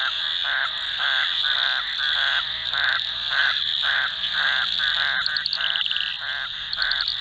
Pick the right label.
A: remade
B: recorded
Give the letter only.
B